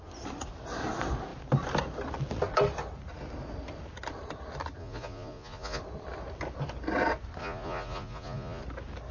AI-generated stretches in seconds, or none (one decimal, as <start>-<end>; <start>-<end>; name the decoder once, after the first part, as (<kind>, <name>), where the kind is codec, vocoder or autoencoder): 4.8-5.8 (vocoder, Vocos); 7.4-8.6

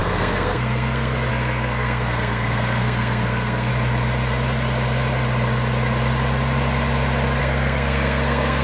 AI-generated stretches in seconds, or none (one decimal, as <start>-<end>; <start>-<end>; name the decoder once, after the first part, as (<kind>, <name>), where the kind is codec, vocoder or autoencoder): 0.0-3.7 (codec, SNAC); 7.4-8.6

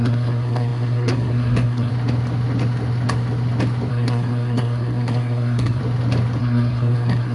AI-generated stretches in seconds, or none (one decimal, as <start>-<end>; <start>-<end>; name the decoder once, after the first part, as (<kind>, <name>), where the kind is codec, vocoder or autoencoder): 0.0-1.9 (codec, SNAC); 3.9-5.8; 6.4-7.3

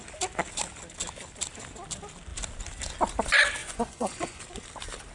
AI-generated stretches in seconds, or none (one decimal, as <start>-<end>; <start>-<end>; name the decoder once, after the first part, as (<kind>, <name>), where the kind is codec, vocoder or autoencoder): 3.6-4.4 (vocoder, Vocos)